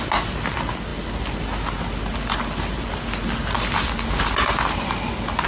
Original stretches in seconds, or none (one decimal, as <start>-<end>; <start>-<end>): 0.0-5.5